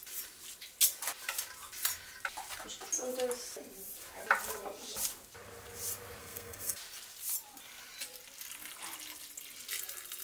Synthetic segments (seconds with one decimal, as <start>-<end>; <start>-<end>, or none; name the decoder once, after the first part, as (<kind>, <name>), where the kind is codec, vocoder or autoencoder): 6.2-6.8 (codec, SNAC)